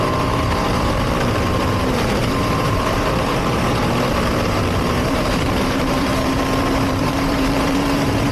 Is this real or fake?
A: fake